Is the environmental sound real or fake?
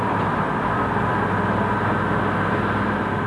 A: real